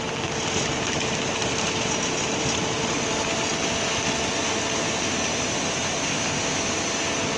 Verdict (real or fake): real